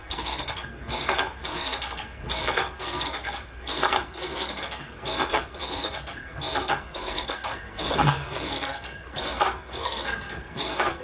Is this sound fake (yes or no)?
yes